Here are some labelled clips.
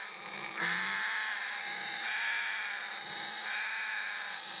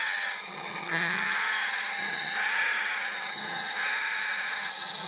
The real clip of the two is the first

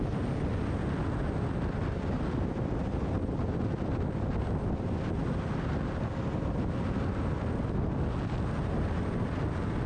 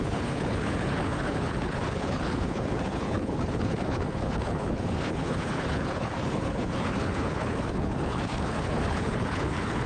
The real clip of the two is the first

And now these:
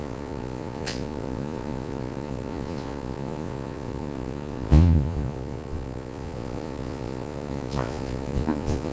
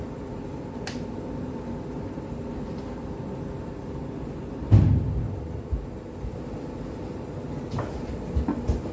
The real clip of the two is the second